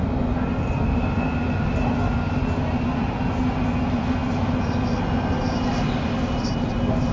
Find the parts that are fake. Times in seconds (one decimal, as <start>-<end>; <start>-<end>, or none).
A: none